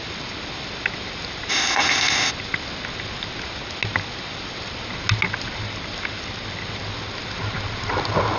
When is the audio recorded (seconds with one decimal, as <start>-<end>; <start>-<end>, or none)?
0.0-1.5; 2.3-8.4